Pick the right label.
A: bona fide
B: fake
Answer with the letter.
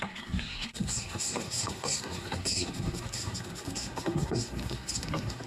B